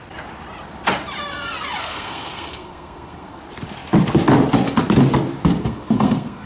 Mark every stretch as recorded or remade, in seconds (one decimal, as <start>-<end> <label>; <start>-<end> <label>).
0.0-1.8 recorded; 1.8-3.4 remade; 3.4-5.6 recorded; 5.6-6.5 remade